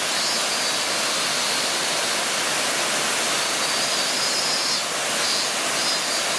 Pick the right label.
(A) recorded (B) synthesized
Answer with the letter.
A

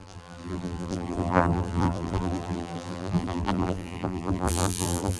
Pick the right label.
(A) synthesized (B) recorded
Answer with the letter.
A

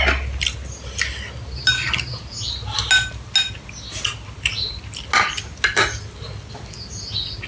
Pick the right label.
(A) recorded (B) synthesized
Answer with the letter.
A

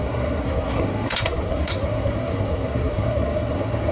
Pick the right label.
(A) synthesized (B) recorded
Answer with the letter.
A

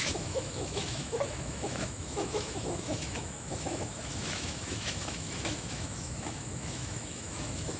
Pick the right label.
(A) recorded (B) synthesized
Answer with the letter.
B